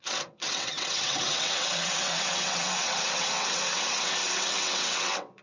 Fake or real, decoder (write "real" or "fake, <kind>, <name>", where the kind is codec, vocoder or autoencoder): fake, vocoder, WaveNeXt